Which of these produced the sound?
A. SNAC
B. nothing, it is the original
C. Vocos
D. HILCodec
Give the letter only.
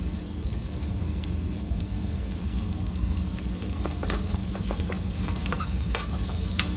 A